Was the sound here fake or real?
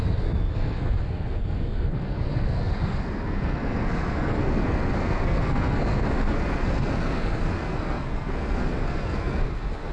fake